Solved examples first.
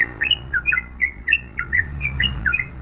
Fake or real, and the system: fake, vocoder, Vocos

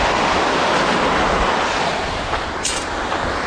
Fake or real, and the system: real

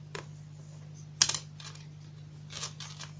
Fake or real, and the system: real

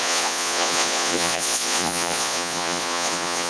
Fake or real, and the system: fake, vocoder, Vocos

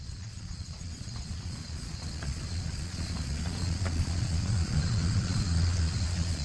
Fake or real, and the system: fake, vocoder, Vocos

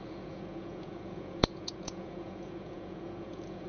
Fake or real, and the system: fake, vocoder, Vocos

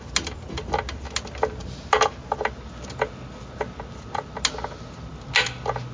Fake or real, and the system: real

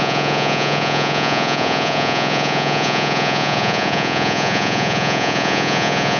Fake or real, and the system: fake, vocoder, Vocos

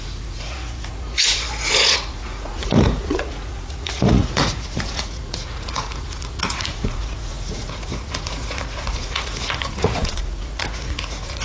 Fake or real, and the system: fake, vocoder, Vocos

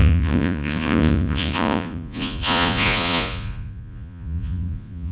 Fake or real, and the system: fake, vocoder, Vocos